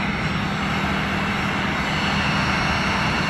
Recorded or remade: recorded